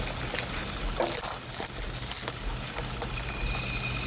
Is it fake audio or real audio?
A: real